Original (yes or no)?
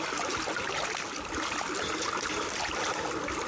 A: yes